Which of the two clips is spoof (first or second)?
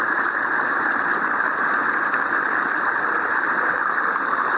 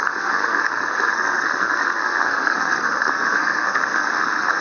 second